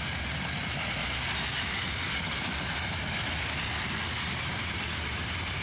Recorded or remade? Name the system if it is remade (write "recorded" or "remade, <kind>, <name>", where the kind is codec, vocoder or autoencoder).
recorded